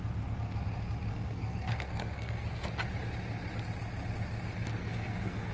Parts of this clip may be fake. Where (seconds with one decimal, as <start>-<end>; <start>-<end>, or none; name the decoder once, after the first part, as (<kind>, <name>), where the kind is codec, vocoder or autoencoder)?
1.1-2.7 (codec, SNAC); 4.7-5.5